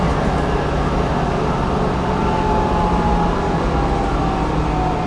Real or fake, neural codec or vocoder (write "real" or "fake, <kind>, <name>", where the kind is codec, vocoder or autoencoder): real